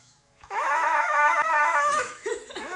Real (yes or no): no